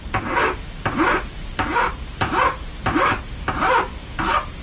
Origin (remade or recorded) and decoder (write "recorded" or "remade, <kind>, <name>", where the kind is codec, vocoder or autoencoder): remade, vocoder, BigVGAN v2